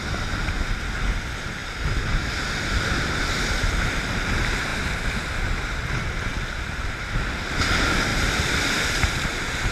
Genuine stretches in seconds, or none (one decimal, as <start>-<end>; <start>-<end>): 0.0-6.3; 7.2-8.1